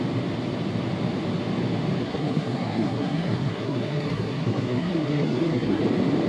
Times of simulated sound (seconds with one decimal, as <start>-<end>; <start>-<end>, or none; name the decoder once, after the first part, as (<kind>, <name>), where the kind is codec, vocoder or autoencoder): 2.0-5.8 (codec, SNAC)